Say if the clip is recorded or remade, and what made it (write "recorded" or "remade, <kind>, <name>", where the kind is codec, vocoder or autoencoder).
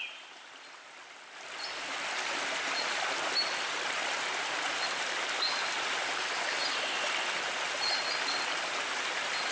recorded